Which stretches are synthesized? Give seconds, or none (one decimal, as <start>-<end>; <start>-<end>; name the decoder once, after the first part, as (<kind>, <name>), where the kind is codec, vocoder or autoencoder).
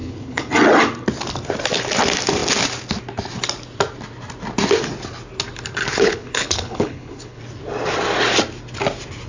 0.0-0.5 (codec, HILCodec); 5.8-7.4